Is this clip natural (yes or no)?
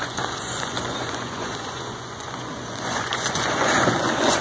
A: no